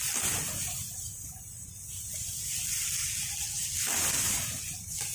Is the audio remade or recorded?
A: recorded